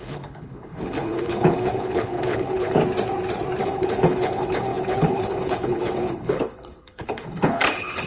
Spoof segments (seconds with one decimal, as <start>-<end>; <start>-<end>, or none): 0.0-2.8; 3.6-8.1